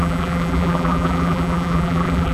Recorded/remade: remade